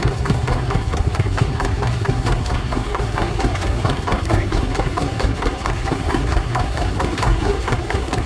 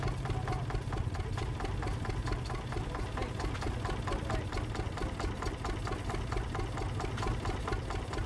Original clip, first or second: second